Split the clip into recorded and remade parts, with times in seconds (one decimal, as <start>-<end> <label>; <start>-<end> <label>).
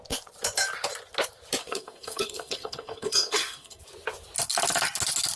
0.0-1.6 recorded; 1.6-3.8 remade; 3.8-5.4 recorded